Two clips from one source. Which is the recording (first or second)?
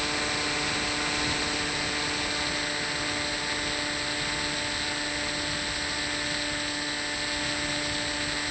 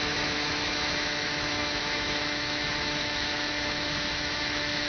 first